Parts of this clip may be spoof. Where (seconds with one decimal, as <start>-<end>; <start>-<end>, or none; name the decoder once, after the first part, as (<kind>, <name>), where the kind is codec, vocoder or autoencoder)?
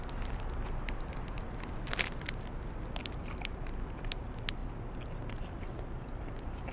none